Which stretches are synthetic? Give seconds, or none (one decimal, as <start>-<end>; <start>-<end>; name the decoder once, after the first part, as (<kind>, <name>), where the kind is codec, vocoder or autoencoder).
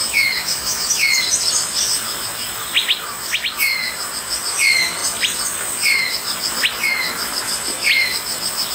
0.0-1.2 (autoencoder, DAC-VAE)